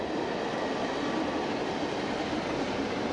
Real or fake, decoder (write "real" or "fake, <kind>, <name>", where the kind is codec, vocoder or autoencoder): real